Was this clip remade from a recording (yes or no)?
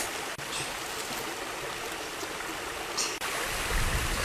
no